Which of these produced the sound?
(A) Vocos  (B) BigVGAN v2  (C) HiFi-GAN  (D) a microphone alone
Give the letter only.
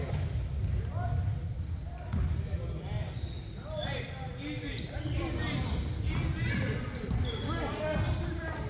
D